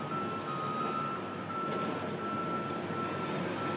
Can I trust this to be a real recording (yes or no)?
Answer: yes